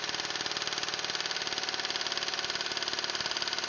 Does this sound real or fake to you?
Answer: real